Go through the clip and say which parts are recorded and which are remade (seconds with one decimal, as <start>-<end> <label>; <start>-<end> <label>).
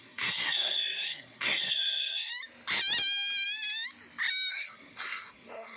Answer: 0.0-2.3 remade; 2.3-4.5 recorded; 4.5-5.8 remade